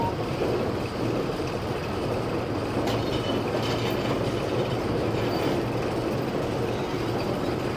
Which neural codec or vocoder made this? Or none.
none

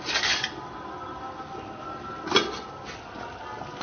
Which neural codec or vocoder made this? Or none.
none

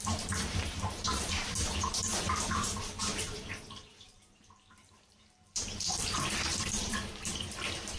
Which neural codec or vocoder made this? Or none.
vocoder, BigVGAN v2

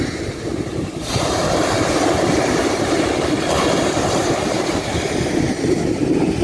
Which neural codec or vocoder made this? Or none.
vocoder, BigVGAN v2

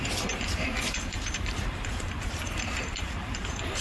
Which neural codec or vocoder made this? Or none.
vocoder, BigVGAN v2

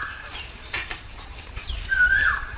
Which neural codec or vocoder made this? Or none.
vocoder, BigVGAN v2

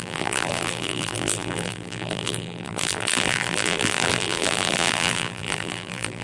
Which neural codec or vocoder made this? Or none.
vocoder, BigVGAN v2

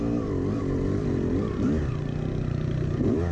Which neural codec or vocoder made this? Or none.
none